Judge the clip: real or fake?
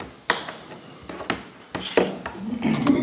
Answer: real